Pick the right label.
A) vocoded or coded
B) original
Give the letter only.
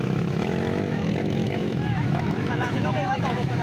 A